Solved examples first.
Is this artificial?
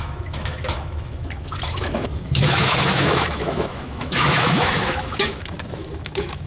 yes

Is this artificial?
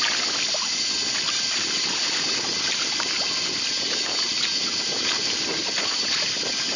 no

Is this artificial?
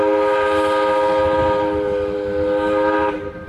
no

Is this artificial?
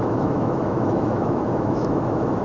yes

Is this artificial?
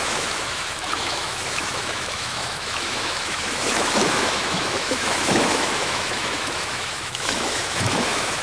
yes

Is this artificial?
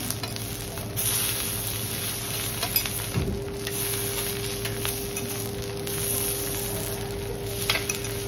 no